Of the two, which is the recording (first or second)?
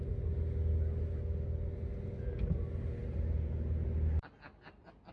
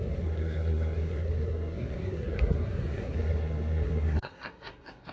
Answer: first